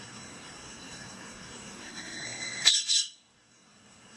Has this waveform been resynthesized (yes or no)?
yes